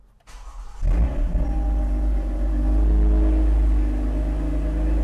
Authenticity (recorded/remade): recorded